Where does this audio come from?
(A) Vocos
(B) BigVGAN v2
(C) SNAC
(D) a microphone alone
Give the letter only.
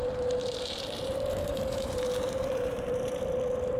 B